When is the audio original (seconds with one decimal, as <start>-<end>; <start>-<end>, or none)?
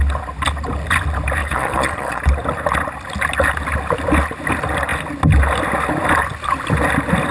0.0-1.4; 2.2-7.3